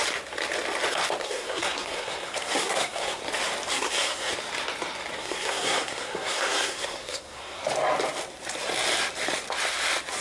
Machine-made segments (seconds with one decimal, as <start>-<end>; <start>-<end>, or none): 1.2-3.2; 3.7-4.3; 5.2-7.6